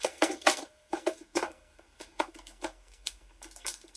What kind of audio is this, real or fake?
fake